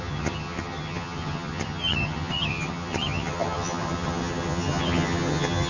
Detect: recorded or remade remade